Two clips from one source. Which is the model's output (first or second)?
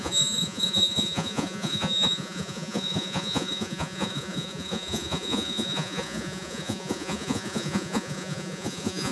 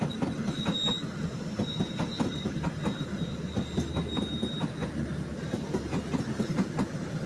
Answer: first